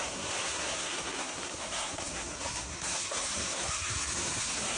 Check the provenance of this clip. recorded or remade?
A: remade